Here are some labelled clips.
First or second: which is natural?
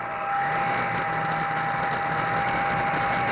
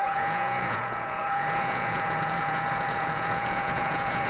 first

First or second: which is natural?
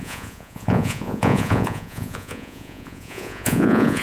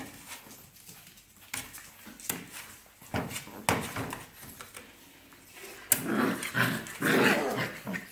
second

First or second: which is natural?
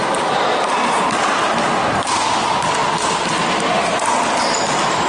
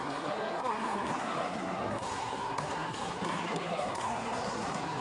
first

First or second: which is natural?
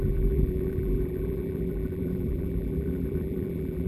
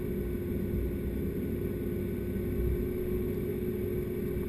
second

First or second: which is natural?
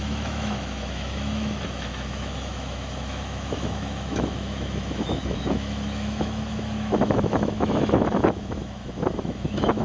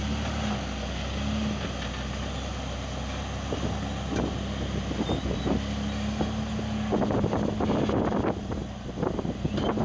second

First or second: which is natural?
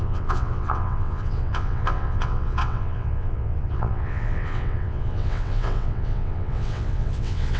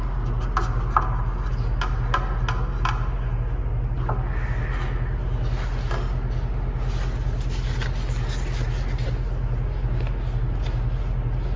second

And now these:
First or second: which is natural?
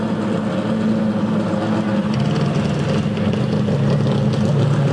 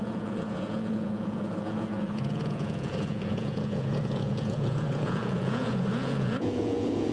first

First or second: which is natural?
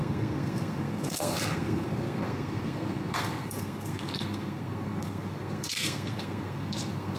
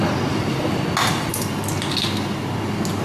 second